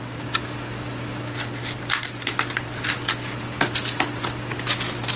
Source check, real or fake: real